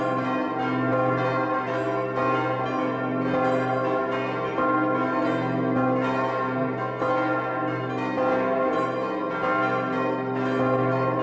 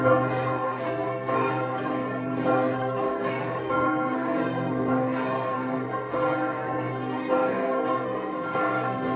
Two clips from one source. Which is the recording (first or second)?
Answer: first